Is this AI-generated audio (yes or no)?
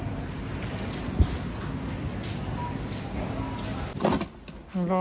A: no